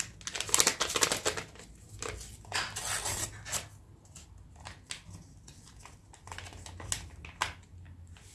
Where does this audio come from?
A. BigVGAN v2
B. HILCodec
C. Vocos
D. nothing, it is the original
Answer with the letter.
D